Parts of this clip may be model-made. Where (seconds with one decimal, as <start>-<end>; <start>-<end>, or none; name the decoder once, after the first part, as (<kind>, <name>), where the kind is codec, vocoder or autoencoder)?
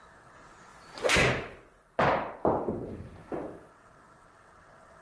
0.0-0.7 (vocoder, WaveNeXt); 3.7-5.0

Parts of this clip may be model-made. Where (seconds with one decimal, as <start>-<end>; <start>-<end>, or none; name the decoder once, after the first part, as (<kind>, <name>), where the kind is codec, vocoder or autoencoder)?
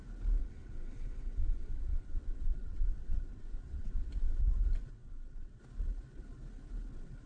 0.4-4.1 (vocoder, WaveNeXt); 4.9-5.6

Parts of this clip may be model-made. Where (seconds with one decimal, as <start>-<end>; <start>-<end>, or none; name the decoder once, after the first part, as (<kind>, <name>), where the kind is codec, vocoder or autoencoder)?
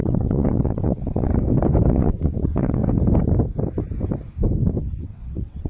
0.0-1.3 (vocoder, WaveNeXt); 1.9-2.8; 5.0-5.7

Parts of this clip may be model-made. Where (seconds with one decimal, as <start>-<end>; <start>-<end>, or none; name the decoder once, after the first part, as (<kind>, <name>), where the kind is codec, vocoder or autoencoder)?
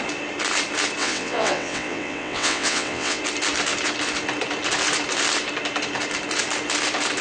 1.0-3.2 (vocoder, WaveNeXt)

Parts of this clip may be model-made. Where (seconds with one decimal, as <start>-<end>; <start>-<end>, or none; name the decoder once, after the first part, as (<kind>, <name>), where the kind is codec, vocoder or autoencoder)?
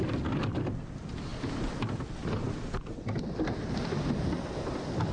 none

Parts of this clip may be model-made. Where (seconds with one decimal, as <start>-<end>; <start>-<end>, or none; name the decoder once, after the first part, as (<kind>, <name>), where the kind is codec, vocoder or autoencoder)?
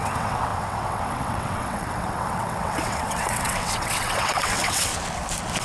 0.0-4.9 (vocoder, WaveNeXt)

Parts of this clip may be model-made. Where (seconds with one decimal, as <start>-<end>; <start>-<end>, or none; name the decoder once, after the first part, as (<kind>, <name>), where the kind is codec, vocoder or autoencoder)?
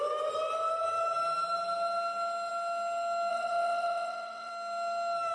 3.3-4.5 (vocoder, WaveNeXt)